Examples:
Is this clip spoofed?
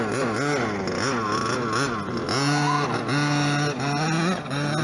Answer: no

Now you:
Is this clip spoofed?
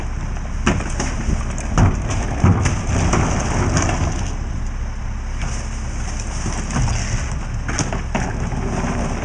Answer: no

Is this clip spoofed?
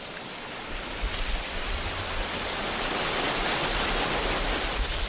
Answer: no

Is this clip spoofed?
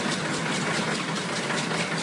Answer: no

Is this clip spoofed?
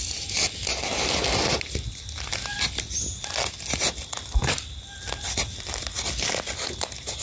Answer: no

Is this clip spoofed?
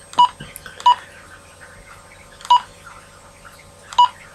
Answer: no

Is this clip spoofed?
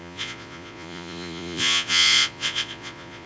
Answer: yes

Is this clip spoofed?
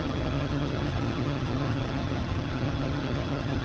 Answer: yes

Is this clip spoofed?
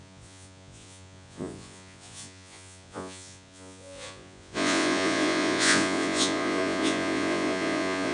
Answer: yes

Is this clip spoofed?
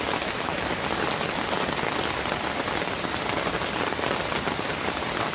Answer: no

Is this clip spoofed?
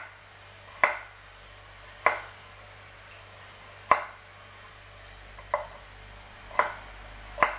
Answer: no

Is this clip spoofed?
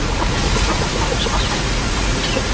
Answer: yes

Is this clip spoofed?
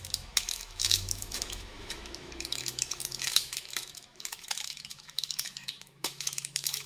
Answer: yes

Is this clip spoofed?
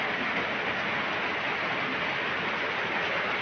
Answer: no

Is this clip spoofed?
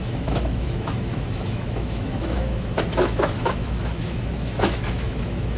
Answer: yes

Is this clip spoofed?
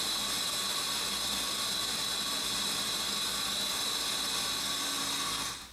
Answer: no